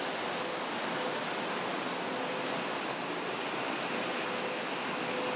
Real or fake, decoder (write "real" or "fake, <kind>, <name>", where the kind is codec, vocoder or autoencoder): real